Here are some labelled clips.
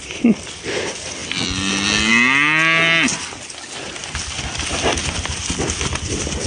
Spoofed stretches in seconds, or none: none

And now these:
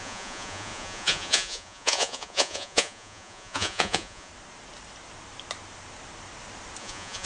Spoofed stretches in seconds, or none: 0.0-4.3 (vocoder, Vocos); 6.8-7.3

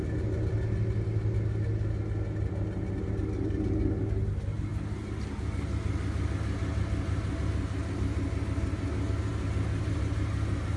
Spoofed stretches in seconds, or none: none

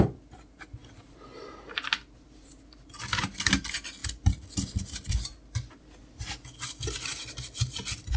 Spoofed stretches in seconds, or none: none

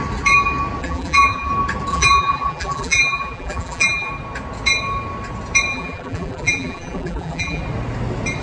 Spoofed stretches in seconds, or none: 0.8-1.5 (vocoder, BigVGAN v2); 1.9-4.1; 5.7-7.6